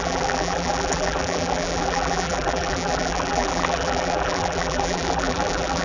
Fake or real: fake